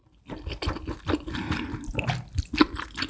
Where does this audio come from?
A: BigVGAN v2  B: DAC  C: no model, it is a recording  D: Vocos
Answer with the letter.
C